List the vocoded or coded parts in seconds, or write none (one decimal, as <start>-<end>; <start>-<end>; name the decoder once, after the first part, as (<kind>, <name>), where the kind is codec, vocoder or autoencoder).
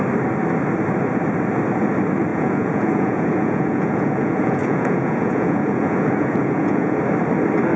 2.3-7.0 (vocoder, Vocos)